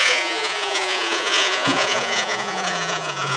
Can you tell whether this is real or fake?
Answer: fake